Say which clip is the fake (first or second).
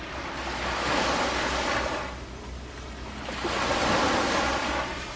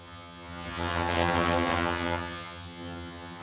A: second